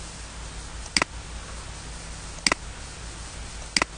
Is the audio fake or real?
real